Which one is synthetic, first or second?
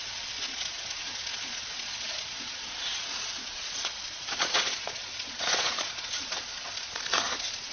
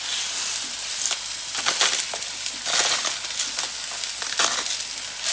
first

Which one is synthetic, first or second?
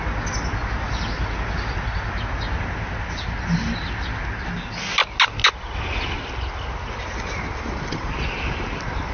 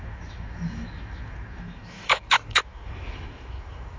second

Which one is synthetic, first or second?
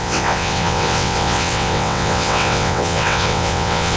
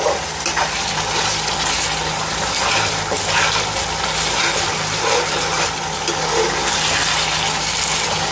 first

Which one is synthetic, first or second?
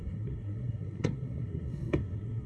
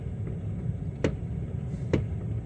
first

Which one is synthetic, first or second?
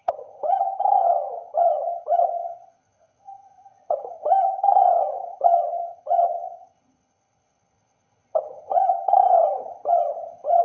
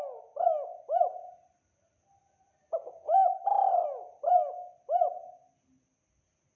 first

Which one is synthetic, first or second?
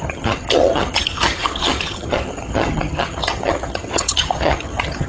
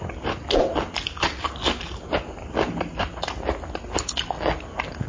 first